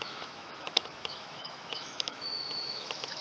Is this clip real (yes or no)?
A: no